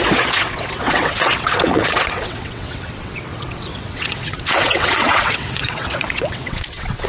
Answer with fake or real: fake